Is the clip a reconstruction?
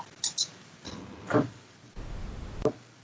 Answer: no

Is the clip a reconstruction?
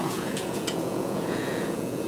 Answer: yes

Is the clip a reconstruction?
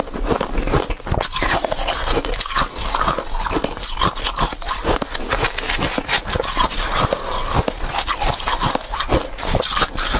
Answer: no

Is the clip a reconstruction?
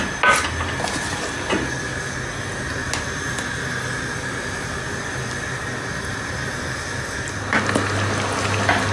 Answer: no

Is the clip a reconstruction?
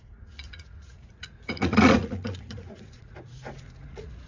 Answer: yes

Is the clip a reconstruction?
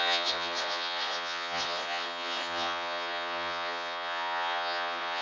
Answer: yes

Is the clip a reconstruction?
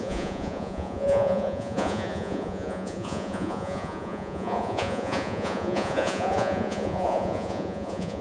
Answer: yes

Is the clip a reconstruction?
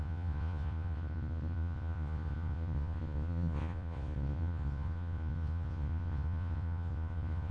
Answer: yes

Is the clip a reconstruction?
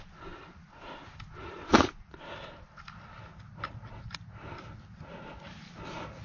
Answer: no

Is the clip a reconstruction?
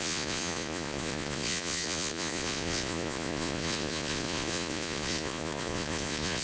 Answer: yes